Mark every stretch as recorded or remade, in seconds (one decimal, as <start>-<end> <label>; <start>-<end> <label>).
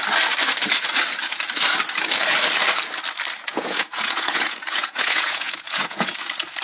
0.0-3.4 recorded; 3.4-6.1 remade; 6.1-6.6 recorded